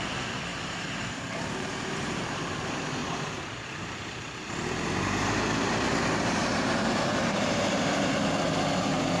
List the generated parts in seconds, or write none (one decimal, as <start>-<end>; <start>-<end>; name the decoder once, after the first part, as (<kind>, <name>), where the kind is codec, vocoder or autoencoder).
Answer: 0.5-2.5 (vocoder, BigVGAN v2); 3.0-4.5; 6.4-7.9